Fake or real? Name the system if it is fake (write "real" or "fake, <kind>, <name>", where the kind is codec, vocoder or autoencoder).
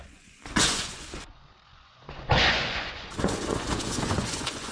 fake, vocoder, Vocos